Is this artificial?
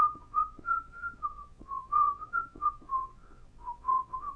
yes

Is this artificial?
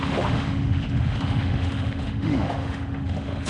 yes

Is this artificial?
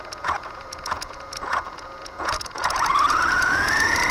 yes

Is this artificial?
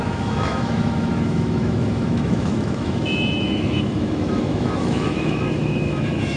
yes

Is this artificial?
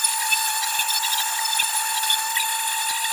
no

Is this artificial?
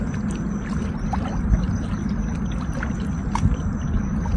no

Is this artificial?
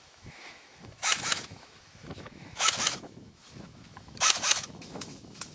yes